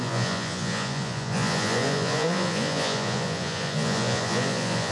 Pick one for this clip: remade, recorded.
remade